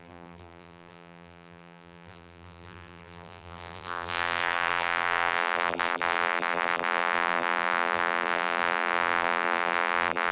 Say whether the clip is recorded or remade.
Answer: remade